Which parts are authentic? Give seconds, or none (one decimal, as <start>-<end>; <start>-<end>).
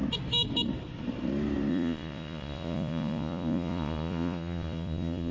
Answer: 0.0-1.7